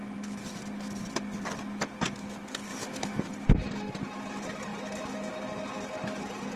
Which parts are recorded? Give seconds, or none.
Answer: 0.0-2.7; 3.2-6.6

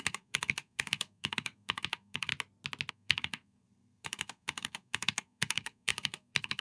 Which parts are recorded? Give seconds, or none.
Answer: 2.3-2.9

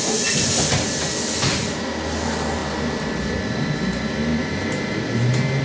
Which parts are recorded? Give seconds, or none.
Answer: 0.0-5.6

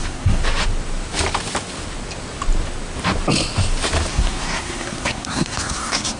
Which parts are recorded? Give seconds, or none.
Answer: 0.4-4.1

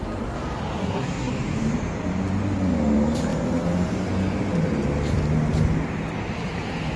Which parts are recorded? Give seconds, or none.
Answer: 0.0-0.8; 1.3-7.0

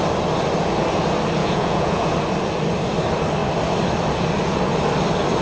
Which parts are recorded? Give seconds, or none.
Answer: 0.0-1.4; 2.0-5.4